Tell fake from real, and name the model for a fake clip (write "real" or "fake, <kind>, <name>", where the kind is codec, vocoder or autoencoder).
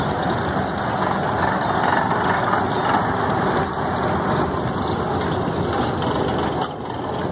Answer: real